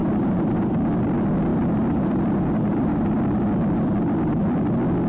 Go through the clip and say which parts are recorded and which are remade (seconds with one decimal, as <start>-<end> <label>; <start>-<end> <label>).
0.0-0.7 remade; 0.7-1.5 recorded; 1.5-3.1 remade; 3.1-5.1 recorded